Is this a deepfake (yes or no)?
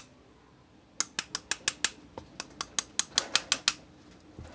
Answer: no